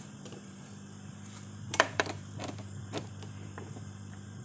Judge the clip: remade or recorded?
remade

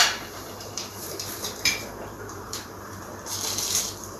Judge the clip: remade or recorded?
remade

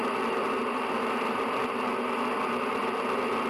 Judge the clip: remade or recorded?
recorded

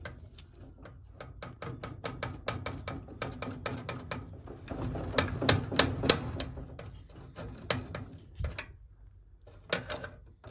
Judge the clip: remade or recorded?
recorded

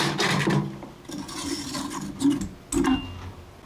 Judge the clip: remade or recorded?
recorded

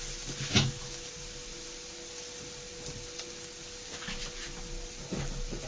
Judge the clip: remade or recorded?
recorded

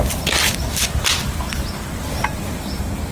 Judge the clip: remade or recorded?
recorded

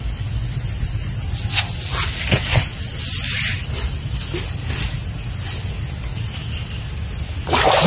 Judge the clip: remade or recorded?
recorded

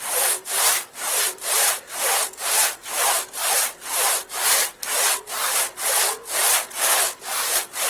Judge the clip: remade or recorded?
remade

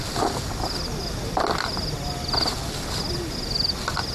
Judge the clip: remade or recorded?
recorded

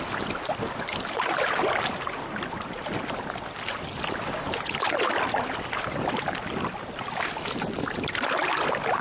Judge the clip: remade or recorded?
recorded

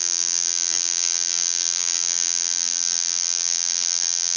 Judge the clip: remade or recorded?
remade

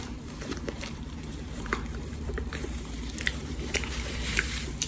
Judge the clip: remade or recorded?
remade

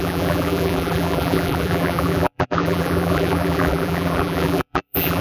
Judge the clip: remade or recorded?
remade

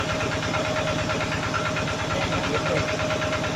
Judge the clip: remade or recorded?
recorded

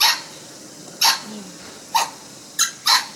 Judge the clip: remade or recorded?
recorded